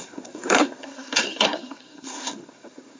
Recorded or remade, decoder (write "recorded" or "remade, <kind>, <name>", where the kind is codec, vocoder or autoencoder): remade, codec, SNAC